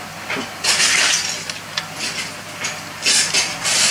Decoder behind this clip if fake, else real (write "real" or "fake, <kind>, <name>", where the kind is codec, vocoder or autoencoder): real